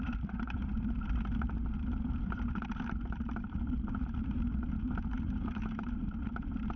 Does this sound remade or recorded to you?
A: remade